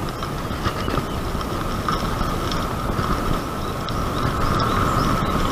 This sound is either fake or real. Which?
real